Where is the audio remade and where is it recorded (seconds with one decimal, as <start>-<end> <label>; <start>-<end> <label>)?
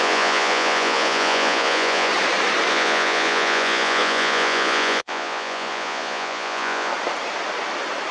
0.0-2.1 remade; 2.1-2.7 recorded; 2.7-6.9 remade; 6.9-8.1 recorded